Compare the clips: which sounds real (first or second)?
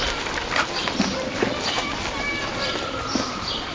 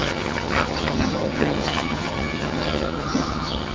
first